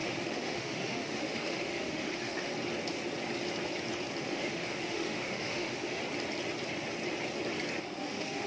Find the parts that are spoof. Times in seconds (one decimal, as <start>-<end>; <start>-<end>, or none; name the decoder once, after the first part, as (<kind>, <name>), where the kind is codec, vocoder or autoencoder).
0.0-2.5 (autoencoder, DAC-VAE); 4.2-6.0; 7.8-8.5